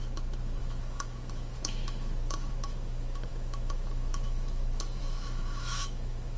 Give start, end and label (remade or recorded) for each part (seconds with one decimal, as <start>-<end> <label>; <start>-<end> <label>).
0.0-6.4 remade